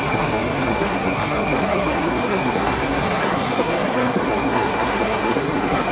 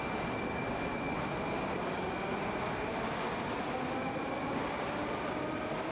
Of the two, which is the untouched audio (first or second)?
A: second